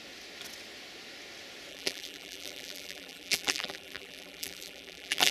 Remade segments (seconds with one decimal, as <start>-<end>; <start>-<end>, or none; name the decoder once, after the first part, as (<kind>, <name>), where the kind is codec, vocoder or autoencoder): 1.7-5.3 (vocoder, BigVGAN v2)